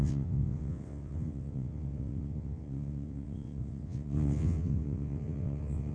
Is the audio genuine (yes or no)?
no